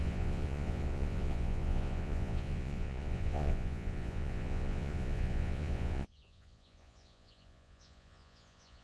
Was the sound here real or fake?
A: fake